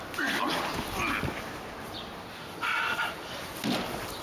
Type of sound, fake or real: real